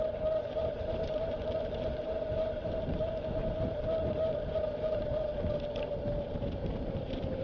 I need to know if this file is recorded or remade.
remade